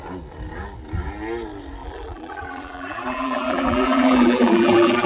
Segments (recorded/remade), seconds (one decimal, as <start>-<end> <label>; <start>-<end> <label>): 0.0-1.8 recorded; 1.8-5.1 remade